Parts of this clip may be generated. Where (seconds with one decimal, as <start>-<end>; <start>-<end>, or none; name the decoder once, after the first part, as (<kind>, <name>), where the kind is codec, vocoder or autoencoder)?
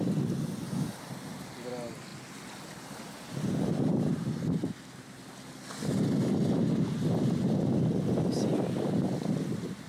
none